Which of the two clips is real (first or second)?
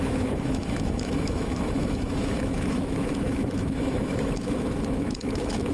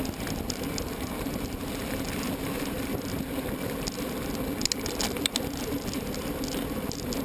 second